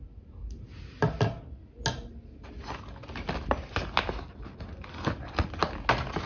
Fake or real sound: real